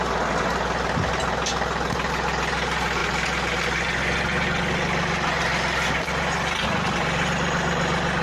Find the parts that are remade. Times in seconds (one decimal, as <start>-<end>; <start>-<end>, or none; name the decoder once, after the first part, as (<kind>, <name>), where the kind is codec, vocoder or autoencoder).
none